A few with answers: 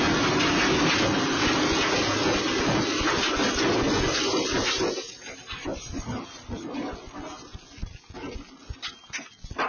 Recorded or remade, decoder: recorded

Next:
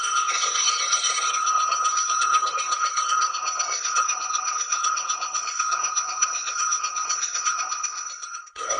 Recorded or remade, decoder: remade, codec, SNAC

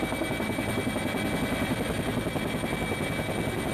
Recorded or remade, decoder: recorded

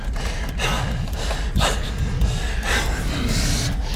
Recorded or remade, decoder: recorded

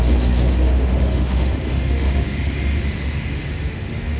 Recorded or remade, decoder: remade, autoencoder, DAC-VAE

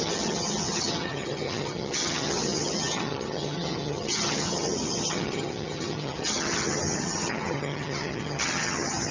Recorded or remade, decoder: remade, vocoder, HiFi-GAN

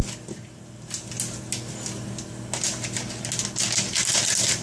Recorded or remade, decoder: recorded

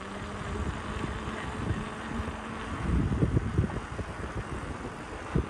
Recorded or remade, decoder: recorded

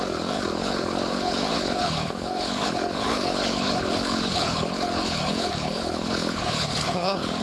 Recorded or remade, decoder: remade, codec, HILCodec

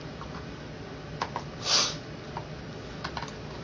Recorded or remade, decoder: recorded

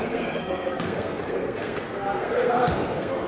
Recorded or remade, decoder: remade, codec, SNAC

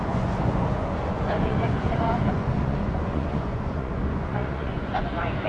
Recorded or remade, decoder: remade, vocoder, Vocos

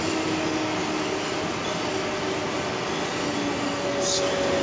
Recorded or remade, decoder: recorded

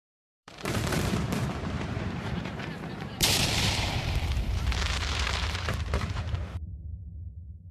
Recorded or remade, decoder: remade, vocoder, BigVGAN v2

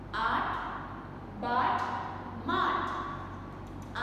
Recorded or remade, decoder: recorded